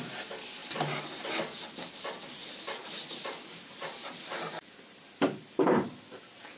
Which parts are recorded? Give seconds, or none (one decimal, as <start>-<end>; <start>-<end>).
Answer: 0.0-2.8